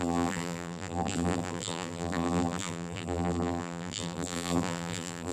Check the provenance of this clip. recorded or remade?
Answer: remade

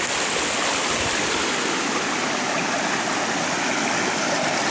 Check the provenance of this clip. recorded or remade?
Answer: recorded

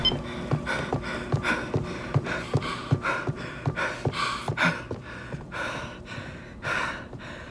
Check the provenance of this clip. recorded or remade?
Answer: recorded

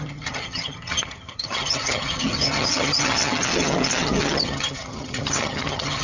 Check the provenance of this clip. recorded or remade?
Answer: remade